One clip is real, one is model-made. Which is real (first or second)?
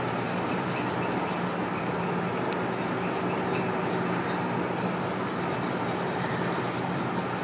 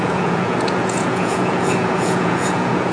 first